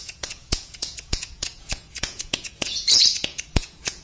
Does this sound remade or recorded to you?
remade